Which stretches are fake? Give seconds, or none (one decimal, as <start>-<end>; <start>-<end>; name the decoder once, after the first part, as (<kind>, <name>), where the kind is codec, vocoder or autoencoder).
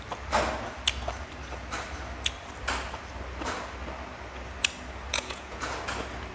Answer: 5.1-5.6 (vocoder, Vocos)